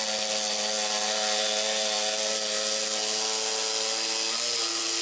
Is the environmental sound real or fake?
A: real